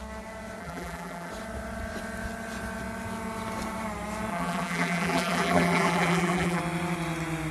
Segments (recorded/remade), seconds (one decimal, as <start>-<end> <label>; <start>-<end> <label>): 0.0-0.6 recorded; 0.6-1.3 remade; 1.3-4.3 recorded; 4.3-6.6 remade; 6.6-7.5 recorded